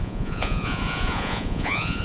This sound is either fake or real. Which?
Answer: fake